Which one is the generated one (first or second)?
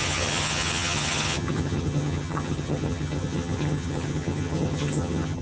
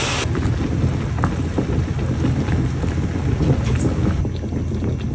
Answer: first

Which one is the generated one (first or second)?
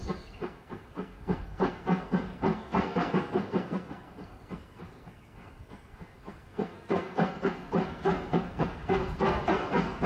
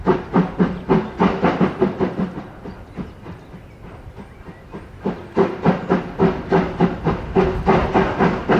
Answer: first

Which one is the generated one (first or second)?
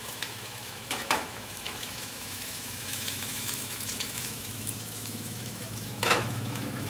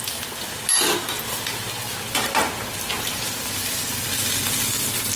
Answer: first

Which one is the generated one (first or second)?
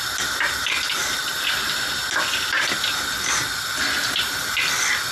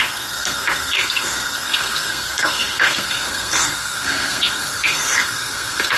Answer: second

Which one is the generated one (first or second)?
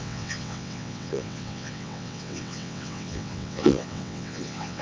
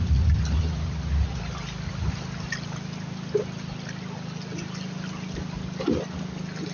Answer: first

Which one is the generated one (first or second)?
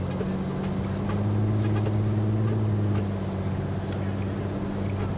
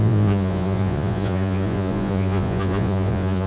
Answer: second